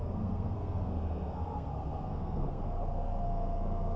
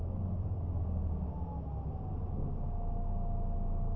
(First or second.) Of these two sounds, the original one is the second